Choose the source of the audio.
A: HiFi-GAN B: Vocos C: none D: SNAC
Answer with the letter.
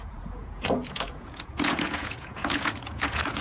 B